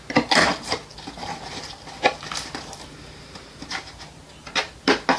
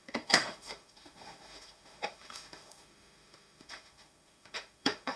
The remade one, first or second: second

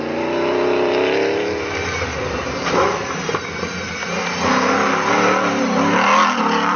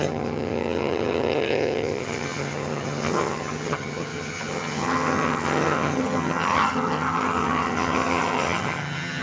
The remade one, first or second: second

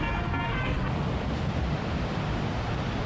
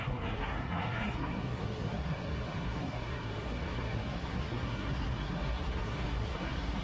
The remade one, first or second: second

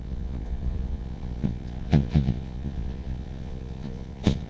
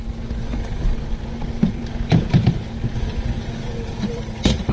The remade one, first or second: first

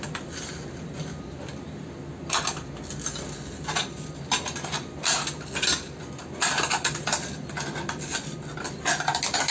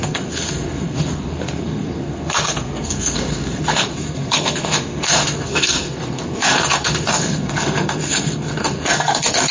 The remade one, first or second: second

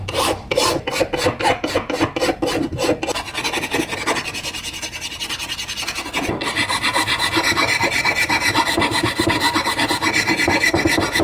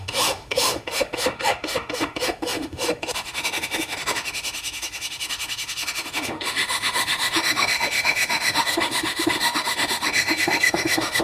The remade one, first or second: second